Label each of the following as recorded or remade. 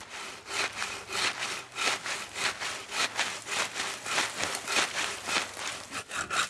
recorded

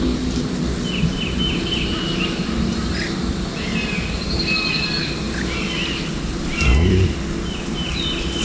recorded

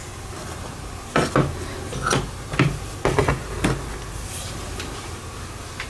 recorded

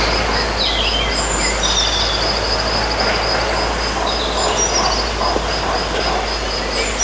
recorded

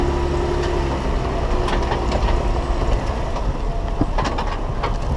recorded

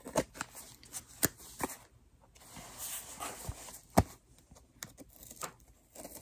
recorded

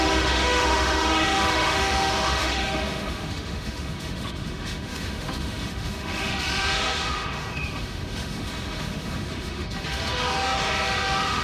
remade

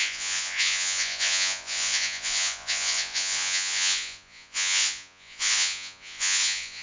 remade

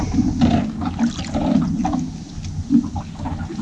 recorded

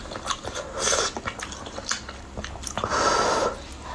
recorded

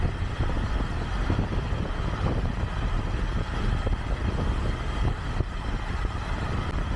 recorded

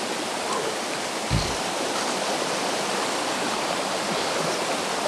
remade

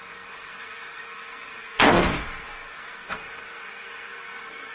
remade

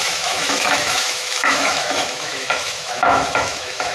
remade